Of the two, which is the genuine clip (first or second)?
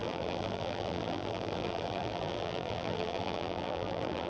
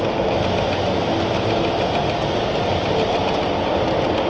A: second